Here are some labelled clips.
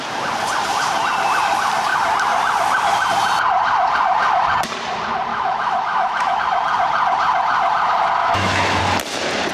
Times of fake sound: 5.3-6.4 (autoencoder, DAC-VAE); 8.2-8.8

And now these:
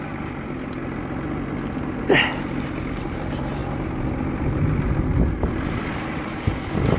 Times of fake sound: none

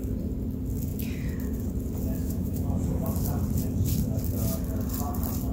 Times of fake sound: 2.2-2.8 (autoencoder, DAC-VAE)

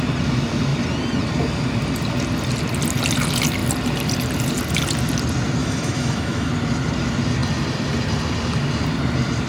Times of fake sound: 5.6-6.5 (autoencoder, DAC-VAE)

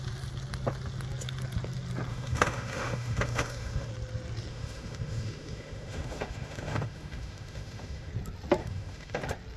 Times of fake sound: 2.1-3.9 (autoencoder, DAC-VAE); 4.5-8.1; 8.6-9.2

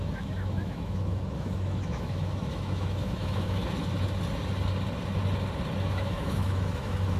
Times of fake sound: 0.0-3.6 (autoencoder, DAC-VAE); 5.9-7.2

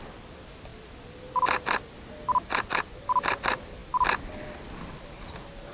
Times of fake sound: none

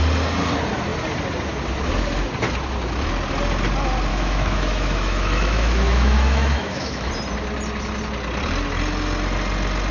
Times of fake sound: 4.1-7.1 (autoencoder, DAC-VAE)